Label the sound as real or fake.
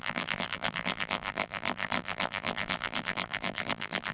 fake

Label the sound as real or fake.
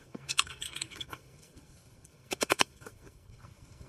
fake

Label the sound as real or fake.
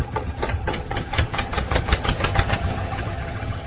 fake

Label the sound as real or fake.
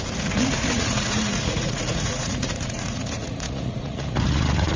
fake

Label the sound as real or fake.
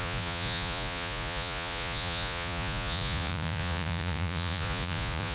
fake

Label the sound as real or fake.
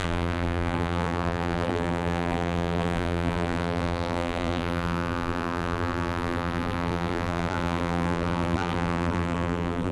fake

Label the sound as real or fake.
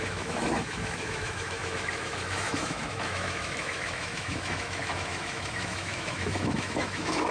fake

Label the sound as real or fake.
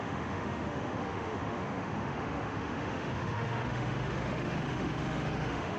fake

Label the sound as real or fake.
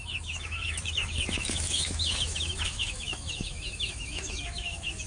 fake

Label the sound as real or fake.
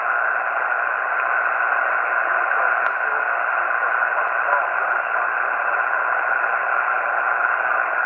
real